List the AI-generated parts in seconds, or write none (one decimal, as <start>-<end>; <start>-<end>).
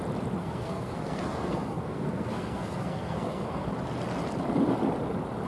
0.4-3.7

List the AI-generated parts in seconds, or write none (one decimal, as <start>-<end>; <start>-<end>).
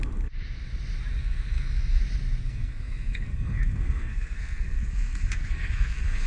1.2-2.0; 2.4-6.3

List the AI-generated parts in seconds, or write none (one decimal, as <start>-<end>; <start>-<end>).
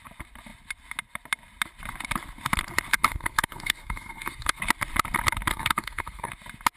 2.9-4.6; 5.5-6.3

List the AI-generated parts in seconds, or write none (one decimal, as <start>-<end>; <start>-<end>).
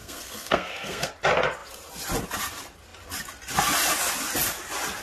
0.0-1.1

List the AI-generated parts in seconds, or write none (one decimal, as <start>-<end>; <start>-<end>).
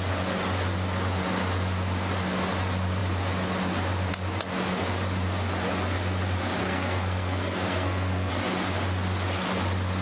6.6-8.3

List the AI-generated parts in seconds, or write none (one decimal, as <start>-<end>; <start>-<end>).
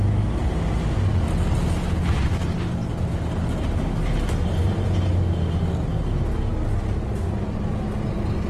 none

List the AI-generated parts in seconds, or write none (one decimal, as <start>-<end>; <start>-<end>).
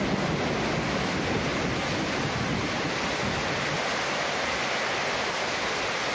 none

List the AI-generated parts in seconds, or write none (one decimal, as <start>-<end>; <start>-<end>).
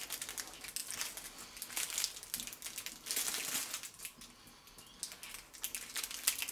none